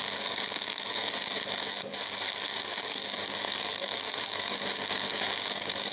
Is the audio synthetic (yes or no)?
yes